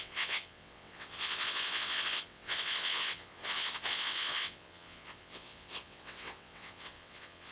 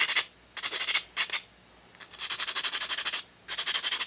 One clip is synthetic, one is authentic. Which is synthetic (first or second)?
first